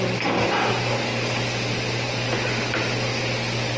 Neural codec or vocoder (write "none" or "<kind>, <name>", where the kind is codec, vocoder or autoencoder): none